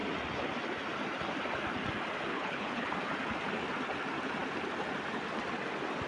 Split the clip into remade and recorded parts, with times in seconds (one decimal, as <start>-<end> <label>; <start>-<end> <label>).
0.0-2.3 recorded; 2.3-2.9 remade; 2.9-6.1 recorded